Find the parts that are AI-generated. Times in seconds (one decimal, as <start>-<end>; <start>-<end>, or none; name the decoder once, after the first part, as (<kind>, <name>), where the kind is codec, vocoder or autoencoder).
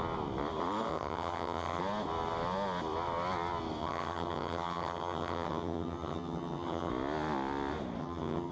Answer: 0.9-1.8 (vocoder, HiFi-GAN); 3.8-6.9; 8.0-8.5